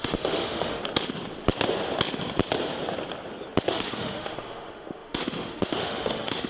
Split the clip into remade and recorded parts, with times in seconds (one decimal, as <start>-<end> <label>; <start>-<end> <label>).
0.0-0.8 remade; 0.8-3.7 recorded; 3.7-6.5 remade